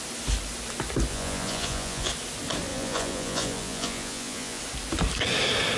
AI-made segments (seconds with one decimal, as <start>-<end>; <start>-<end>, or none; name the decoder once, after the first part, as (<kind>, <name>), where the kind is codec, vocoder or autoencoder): 1.1-2.1 (vocoder, Vocos); 2.7-4.6